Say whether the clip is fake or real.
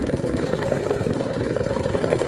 fake